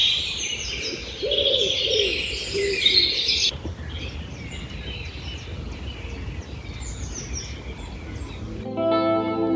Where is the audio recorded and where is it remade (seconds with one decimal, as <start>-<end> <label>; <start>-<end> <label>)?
0.0-9.6 recorded